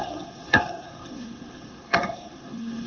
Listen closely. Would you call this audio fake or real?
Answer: fake